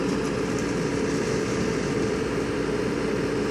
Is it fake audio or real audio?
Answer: real